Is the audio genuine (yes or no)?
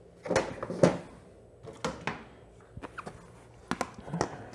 yes